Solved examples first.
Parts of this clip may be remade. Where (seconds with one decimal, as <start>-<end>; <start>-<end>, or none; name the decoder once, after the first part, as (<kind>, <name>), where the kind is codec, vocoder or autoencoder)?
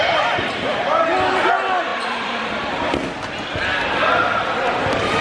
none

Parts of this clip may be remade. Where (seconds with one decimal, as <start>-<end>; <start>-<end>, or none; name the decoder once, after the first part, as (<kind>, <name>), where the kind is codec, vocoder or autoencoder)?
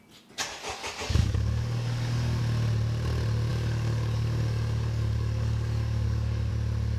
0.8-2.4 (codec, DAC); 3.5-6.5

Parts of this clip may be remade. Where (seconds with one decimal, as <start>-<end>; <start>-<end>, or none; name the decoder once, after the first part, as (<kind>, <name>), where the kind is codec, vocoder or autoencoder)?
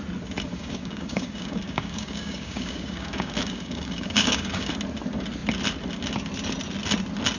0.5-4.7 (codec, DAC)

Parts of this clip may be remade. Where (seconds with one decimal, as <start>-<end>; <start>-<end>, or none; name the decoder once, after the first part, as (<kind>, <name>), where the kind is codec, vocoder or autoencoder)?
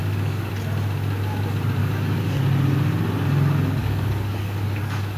0.0-0.5 (codec, DAC); 1.8-2.4; 3.8-5.2